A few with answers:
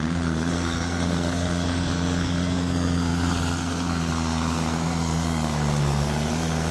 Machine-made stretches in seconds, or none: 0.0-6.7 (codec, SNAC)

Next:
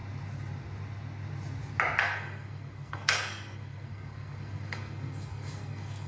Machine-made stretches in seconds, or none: 2.0-6.1 (codec, SNAC)